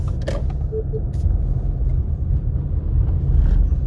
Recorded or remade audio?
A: recorded